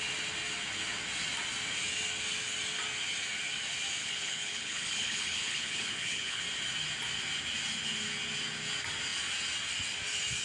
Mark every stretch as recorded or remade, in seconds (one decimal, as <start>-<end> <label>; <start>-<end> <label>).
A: 0.0-4.0 recorded; 4.0-6.4 remade; 6.4-10.4 recorded